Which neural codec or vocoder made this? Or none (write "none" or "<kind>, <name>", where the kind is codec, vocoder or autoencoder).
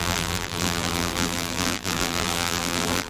vocoder, BigVGAN v2